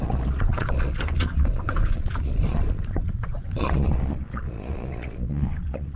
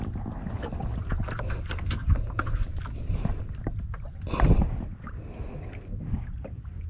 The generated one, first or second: first